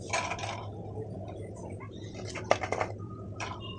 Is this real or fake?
real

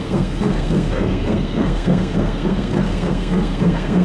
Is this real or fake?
fake